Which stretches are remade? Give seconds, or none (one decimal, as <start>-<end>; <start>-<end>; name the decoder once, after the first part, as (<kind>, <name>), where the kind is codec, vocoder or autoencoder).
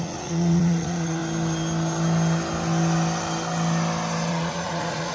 0.0-1.2 (vocoder, Vocos); 4.3-5.1